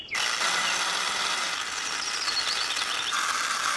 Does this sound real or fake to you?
real